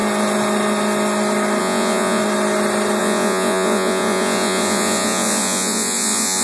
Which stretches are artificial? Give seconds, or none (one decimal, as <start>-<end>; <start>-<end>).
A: 1.6-2.2; 3.0-6.4